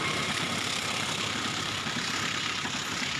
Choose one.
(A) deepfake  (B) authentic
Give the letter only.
A